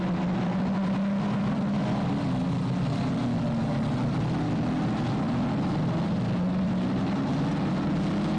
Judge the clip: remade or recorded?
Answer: recorded